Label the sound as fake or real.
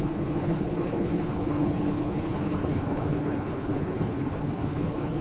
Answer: fake